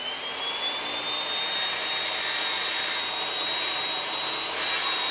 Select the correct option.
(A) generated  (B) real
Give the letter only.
B